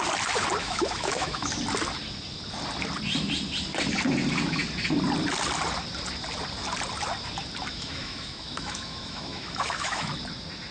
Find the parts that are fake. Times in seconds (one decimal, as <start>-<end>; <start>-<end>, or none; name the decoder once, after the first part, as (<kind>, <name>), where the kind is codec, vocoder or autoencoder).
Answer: 0.6-1.6 (autoencoder, DAC-VAE); 7.7-10.1